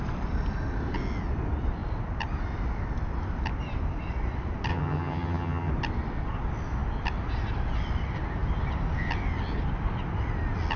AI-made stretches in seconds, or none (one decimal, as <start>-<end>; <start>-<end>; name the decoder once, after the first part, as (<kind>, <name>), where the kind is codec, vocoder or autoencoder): 4.7-5.7 (vocoder, HiFi-GAN)